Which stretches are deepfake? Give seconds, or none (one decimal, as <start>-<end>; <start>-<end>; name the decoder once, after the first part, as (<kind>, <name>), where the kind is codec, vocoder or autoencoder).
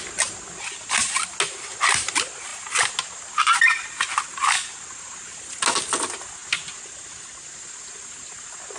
none